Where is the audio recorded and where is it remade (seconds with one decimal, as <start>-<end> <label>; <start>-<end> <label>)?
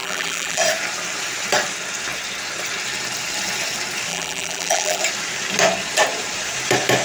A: 0.0-0.6 remade; 0.6-4.1 recorded; 4.1-5.0 remade; 5.0-7.0 recorded